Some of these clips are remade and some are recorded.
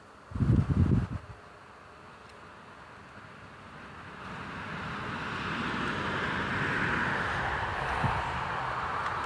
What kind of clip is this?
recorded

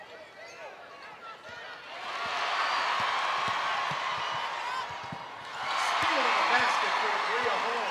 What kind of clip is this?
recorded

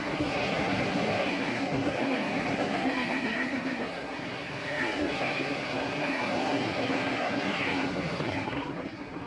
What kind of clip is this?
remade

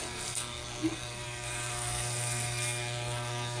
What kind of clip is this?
remade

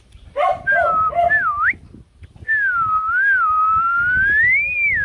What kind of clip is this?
recorded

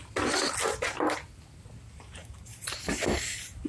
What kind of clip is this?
recorded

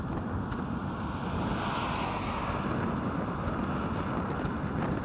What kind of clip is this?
recorded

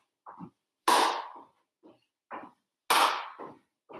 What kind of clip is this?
recorded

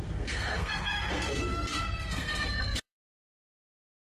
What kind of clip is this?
remade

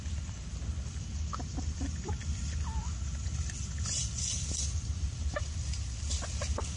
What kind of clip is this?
recorded